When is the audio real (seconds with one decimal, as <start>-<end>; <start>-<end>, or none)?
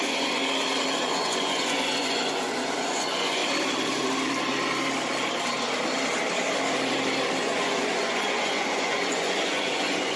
0.4-1.0; 3.4-7.4